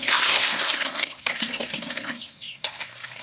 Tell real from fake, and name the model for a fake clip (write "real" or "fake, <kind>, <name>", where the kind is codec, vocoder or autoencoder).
fake, codec, SNAC